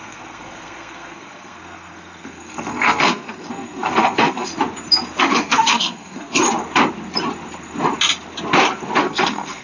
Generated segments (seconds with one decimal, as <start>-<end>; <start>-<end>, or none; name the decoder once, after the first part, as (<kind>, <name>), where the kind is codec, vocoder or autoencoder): 0.0-4.5 (codec, SNAC); 5.2-6.4; 9.0-9.6